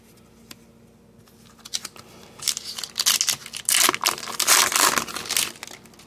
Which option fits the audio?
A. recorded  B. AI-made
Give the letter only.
A